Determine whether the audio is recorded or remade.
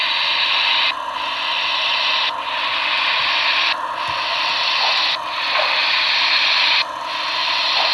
recorded